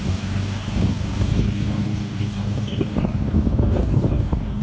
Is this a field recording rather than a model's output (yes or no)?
no